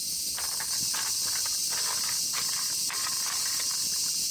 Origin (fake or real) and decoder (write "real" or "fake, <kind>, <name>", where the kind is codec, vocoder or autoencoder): real